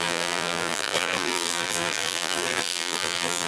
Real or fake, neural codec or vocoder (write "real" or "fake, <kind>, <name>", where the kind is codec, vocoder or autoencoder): fake, vocoder, BigVGAN v2